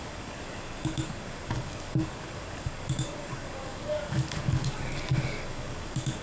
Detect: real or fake fake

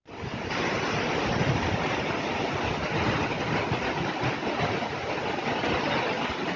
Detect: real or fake real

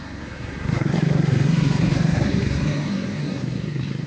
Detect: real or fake fake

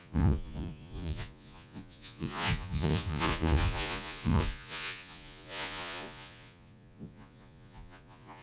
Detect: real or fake fake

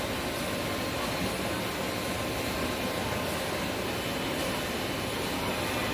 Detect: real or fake real